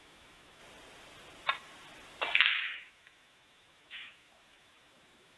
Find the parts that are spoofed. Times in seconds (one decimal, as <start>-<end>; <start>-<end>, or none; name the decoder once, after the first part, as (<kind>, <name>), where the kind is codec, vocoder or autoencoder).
0.0-0.6 (autoencoder, DAC-VAE); 2.4-5.4